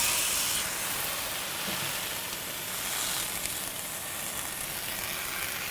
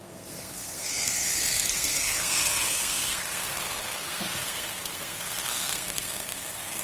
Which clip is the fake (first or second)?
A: second